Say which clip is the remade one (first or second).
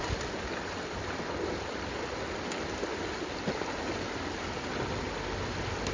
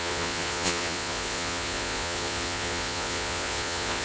second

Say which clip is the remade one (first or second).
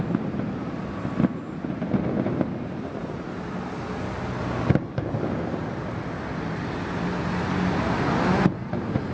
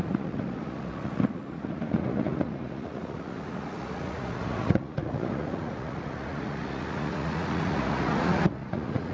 second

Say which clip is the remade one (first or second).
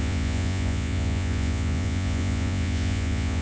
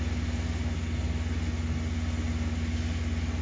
first